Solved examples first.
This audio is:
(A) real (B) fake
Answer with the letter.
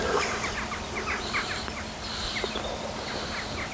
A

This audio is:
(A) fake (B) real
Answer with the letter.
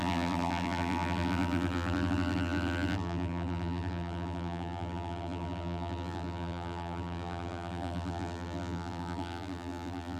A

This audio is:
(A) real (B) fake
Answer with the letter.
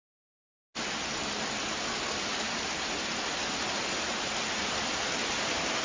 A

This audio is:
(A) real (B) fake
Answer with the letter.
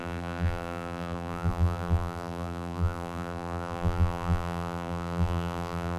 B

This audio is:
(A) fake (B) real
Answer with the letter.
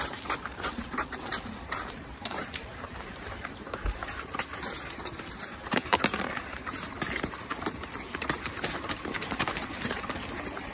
A